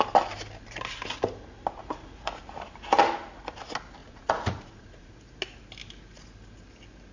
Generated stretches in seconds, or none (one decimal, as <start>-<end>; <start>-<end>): 1.8-2.4; 4.0-5.2